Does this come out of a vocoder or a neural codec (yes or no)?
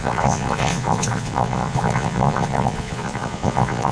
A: yes